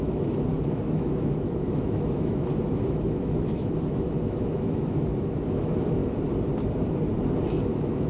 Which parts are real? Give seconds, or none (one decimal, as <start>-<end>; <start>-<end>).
6.0-7.6